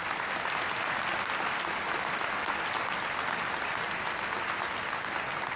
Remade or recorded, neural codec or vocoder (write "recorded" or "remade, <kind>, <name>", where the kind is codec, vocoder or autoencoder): recorded